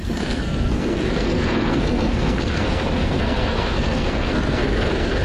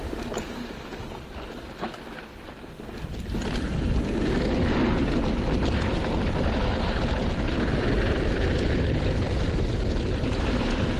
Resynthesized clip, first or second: first